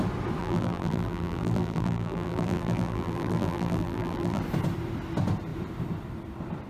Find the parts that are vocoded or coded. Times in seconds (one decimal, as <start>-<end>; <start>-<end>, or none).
0.4-4.4